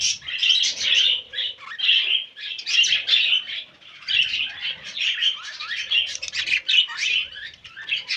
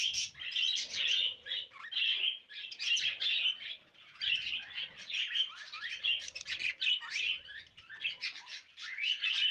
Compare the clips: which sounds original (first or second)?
second